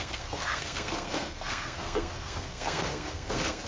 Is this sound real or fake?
fake